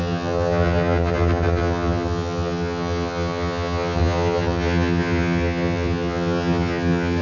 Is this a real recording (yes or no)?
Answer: no